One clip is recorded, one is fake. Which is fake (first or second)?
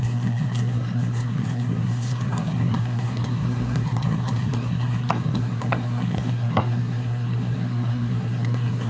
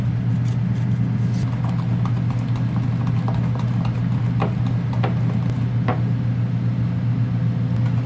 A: first